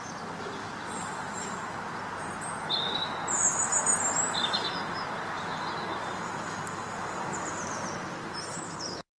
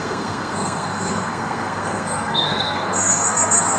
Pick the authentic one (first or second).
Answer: first